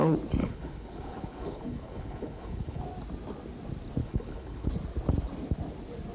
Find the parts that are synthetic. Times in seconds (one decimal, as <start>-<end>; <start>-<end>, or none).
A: 0.4-2.8; 4.0-4.7